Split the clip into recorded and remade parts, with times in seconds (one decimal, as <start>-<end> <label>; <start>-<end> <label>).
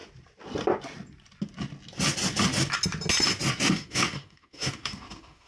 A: 0.0-3.7 recorded; 3.7-5.5 remade